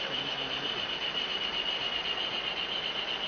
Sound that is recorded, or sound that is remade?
recorded